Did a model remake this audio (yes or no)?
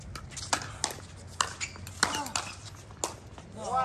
no